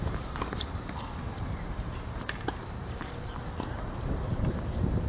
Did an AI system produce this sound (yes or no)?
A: yes